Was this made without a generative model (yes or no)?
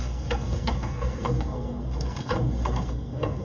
no